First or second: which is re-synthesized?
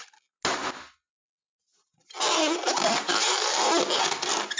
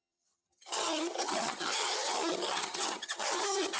second